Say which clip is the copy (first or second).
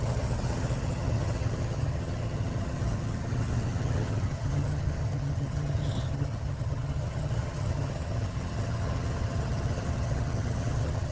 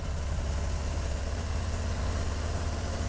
first